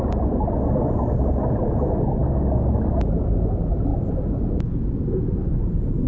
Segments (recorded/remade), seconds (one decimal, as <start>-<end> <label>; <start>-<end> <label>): 0.0-6.1 recorded